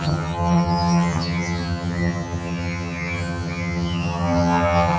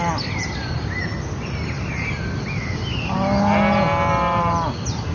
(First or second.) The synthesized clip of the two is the first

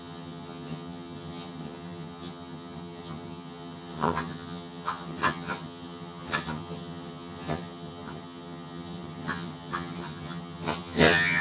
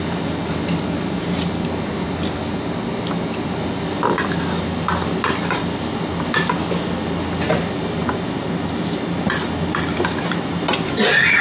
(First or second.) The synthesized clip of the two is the first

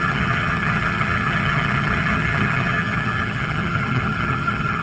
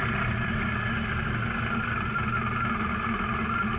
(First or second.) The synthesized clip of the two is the first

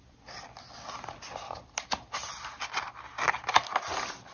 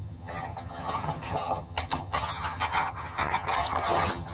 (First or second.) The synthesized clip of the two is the second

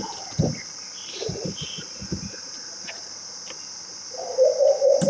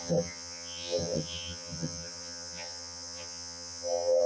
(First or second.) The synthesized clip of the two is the second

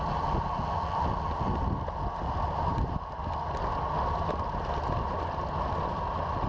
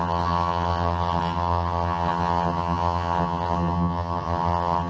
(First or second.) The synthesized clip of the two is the second